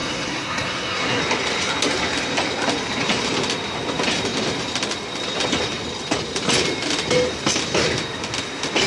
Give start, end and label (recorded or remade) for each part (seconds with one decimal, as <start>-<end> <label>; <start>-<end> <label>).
0.0-1.2 remade; 1.2-8.9 recorded